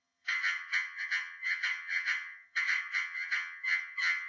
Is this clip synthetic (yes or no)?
yes